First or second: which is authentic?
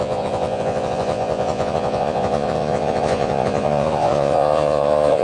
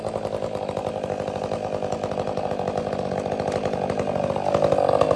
second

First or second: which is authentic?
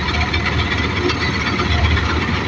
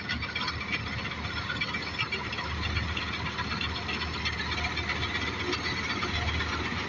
second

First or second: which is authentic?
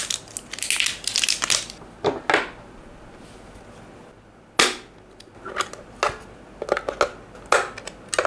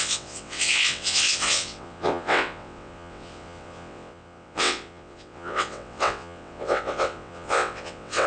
first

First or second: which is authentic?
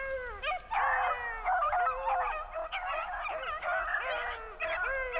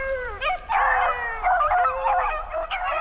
first